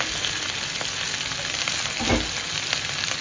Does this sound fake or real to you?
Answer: real